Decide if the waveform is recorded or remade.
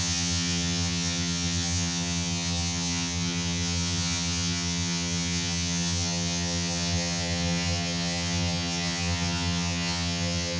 remade